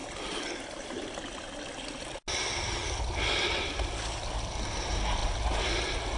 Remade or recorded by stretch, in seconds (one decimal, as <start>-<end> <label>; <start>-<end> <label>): 0.0-6.2 recorded

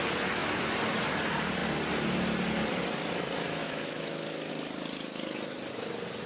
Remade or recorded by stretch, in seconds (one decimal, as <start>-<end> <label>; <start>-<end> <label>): 0.0-3.6 recorded; 3.6-4.5 remade; 4.5-6.3 recorded

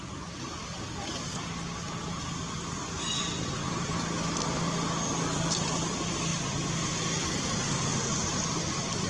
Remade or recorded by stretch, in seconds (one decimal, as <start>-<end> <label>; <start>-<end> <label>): 0.0-9.1 recorded

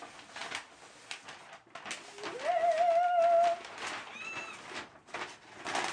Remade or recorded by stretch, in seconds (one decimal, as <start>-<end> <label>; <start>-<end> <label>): 0.0-5.9 recorded

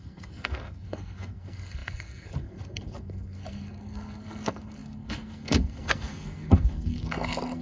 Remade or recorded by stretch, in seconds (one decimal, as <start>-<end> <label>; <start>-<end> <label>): 0.0-7.6 remade

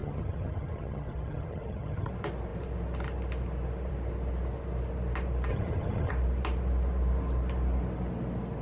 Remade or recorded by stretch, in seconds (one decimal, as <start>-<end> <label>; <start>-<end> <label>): 0.0-2.1 remade; 2.1-5.5 recorded; 5.5-6.1 remade; 6.1-8.6 recorded

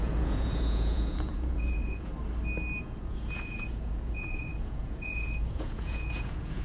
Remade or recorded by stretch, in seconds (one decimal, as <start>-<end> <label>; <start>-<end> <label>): 0.0-2.1 remade; 2.1-2.8 recorded; 2.8-6.6 remade